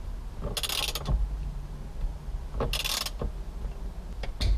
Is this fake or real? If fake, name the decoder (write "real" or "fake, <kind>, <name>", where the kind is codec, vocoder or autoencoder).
real